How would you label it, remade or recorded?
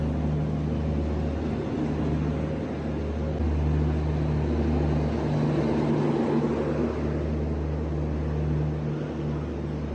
recorded